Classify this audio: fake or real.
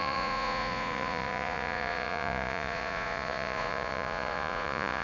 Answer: fake